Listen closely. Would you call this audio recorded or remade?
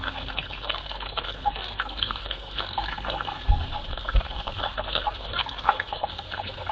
remade